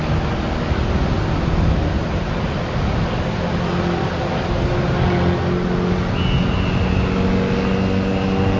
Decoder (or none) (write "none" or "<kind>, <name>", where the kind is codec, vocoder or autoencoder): none